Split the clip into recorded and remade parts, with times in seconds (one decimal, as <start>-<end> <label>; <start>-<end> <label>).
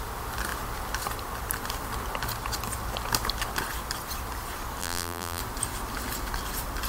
0.0-4.8 recorded; 4.8-5.4 remade; 5.4-6.9 recorded